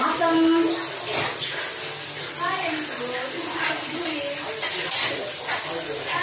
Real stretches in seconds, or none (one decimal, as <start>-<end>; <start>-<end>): 0.0-6.2